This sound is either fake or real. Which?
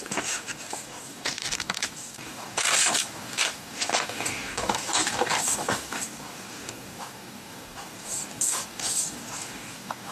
fake